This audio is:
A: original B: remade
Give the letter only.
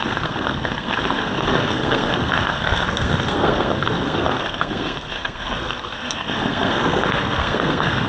B